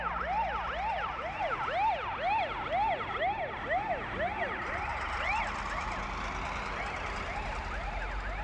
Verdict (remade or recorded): recorded